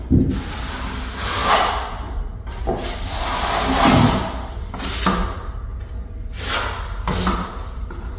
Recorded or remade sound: recorded